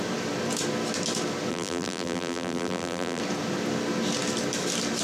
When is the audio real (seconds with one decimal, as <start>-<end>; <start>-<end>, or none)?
0.0-1.5; 3.2-5.0